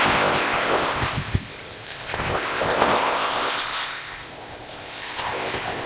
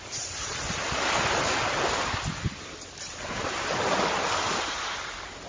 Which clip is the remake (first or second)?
first